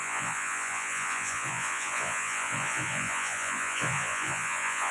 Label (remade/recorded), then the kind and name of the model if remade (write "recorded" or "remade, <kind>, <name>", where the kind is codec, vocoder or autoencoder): remade, vocoder, Vocos